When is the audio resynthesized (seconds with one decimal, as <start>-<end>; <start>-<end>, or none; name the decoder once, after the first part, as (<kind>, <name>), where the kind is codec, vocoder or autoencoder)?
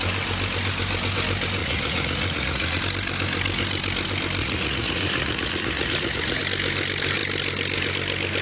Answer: 1.6-2.8 (vocoder, Vocos); 4.4-6.4